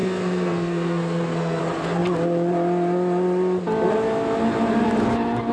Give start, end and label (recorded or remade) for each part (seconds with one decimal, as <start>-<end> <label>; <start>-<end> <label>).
0.0-1.6 remade; 1.6-5.5 recorded